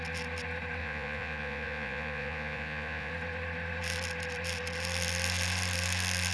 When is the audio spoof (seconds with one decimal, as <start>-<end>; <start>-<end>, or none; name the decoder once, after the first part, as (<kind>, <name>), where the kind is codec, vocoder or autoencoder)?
0.8-3.1 (vocoder, Vocos)